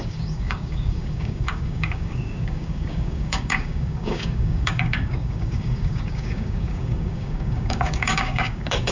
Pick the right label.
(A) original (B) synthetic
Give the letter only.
B